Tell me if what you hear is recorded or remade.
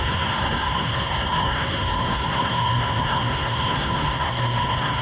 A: remade